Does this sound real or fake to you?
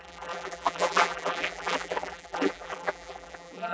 fake